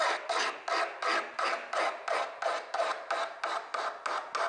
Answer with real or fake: real